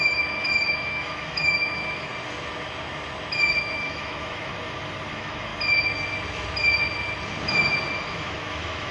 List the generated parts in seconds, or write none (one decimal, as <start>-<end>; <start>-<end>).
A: 0.0-2.1; 3.6-4.5; 5.1-5.5; 8.0-8.9